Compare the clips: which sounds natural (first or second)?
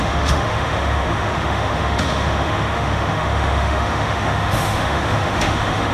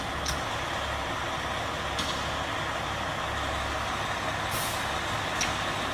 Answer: second